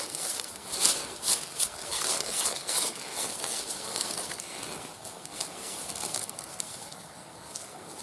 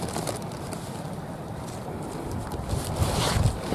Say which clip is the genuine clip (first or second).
second